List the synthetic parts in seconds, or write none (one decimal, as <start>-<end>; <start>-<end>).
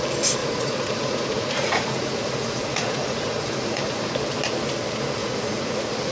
0.4-4.1; 5.2-6.1